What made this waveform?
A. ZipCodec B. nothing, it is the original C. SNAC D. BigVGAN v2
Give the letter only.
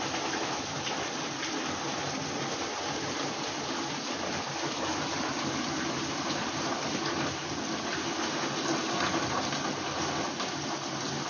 B